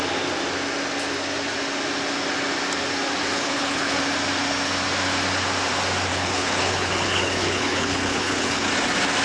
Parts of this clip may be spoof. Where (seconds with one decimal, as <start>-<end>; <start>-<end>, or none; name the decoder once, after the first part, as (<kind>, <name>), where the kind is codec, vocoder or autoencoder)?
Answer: 3.2-4.0 (codec, HILCodec); 6.1-8.7